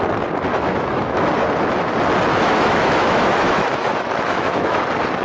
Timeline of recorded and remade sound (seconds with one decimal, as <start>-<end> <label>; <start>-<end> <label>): 0.0-0.5 recorded; 0.5-1.3 remade; 1.3-2.3 recorded; 2.3-4.8 remade; 4.8-5.2 recorded